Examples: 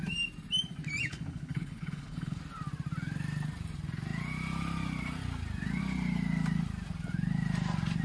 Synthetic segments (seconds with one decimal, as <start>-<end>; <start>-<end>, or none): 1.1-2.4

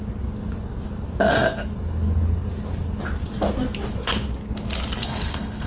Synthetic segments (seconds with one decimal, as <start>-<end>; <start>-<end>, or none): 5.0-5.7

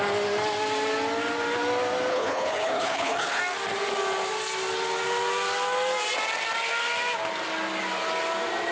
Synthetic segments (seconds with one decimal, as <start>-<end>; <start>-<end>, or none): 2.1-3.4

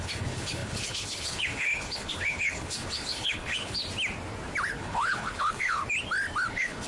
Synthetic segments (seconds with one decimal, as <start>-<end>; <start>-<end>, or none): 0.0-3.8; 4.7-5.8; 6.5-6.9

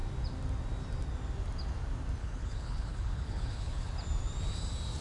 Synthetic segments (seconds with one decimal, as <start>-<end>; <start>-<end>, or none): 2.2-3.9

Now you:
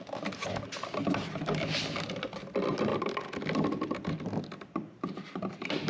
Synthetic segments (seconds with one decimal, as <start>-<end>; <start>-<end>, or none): none

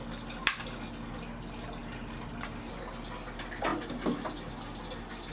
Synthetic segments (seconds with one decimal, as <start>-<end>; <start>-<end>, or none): none

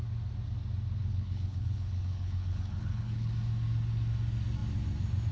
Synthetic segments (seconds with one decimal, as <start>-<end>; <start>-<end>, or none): 1.0-3.3